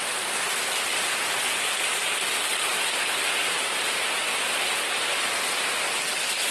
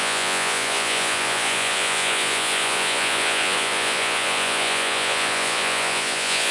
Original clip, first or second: first